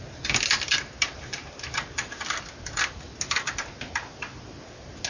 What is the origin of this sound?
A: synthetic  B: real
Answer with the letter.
B